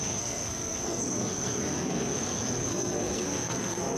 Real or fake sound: fake